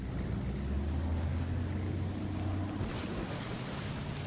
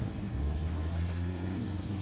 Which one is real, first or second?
first